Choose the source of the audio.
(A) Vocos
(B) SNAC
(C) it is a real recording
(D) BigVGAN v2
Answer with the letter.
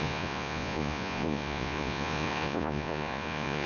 A